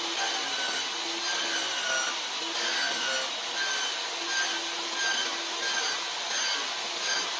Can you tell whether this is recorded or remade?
recorded